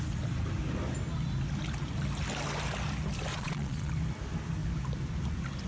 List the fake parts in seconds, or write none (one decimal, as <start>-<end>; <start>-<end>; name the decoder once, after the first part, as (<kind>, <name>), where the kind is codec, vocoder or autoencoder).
3.3-3.9 (vocoder, Vocos)